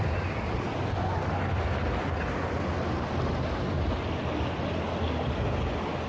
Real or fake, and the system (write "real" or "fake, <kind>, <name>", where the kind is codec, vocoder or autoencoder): real